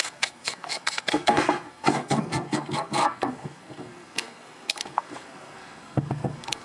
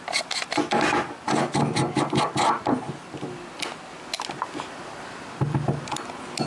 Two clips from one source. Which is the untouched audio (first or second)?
second